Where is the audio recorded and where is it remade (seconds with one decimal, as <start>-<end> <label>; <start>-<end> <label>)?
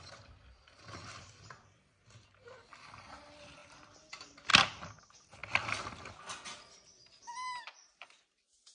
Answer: 0.0-2.7 remade; 2.7-3.2 recorded; 3.2-4.5 remade; 4.5-5.0 recorded; 5.0-5.4 remade; 5.4-6.1 recorded; 6.1-8.7 remade